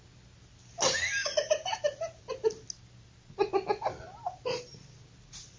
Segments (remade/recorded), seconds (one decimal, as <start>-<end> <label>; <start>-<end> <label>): 0.0-5.6 recorded